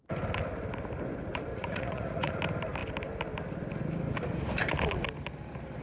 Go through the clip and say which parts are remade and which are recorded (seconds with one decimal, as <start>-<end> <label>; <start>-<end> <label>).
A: 0.0-1.5 recorded; 1.5-2.3 remade; 2.3-5.8 recorded